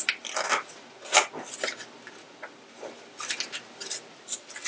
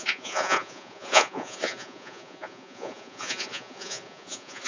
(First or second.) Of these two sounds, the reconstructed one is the second